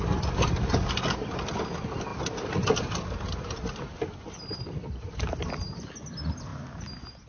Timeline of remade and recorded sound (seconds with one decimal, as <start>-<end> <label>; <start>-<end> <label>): 0.0-7.3 recorded

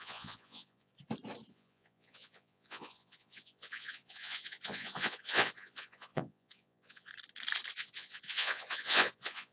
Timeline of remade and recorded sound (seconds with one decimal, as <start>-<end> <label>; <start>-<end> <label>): 0.0-0.9 remade; 0.9-1.5 recorded; 1.5-7.1 remade; 7.1-7.7 recorded; 7.7-9.5 remade

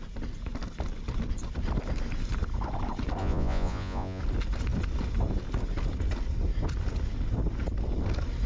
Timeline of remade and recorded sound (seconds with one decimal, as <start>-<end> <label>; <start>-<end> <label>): 0.0-3.2 recorded; 3.2-4.2 remade; 4.2-8.5 recorded

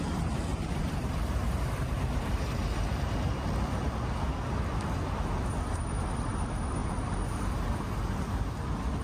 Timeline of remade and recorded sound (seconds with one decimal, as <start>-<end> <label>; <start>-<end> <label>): 0.0-0.5 recorded; 0.5-3.2 remade; 3.2-6.8 recorded; 6.8-7.5 remade; 7.5-9.0 recorded

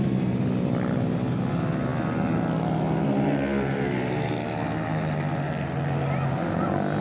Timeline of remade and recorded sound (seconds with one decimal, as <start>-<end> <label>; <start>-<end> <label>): 0.0-7.0 recorded

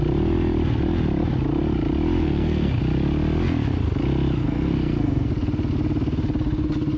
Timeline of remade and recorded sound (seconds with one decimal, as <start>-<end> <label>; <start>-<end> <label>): 0.0-2.2 recorded; 2.2-2.8 remade; 2.8-4.4 recorded; 4.4-5.3 remade; 5.3-7.0 recorded